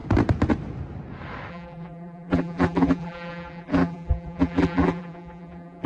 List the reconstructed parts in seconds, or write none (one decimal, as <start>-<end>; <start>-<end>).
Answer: 1.5-5.9